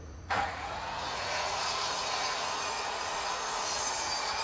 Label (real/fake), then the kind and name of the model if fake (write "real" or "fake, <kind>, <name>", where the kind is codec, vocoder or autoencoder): fake, vocoder, Vocos